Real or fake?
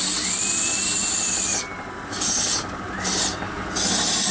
real